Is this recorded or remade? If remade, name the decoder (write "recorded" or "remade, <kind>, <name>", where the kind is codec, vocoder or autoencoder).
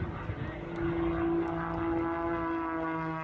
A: recorded